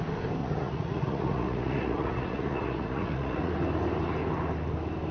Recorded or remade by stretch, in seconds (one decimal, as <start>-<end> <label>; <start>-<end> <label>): 0.0-0.4 recorded; 0.4-3.5 remade; 3.5-5.1 recorded